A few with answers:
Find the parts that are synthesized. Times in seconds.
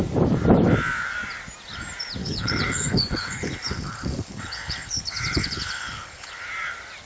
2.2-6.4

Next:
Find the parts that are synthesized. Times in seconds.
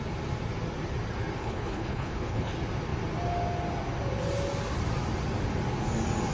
1.4-2.5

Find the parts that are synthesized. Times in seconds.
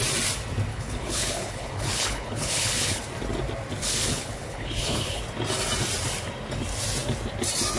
0.7-3.0; 3.8-5.2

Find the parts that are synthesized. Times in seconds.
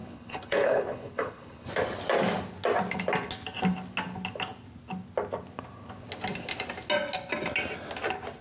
0.0-1.7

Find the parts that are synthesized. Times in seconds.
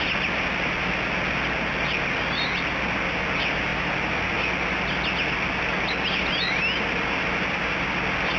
none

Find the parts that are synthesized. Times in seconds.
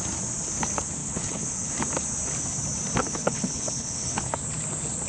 1.0-1.7; 3.0-4.3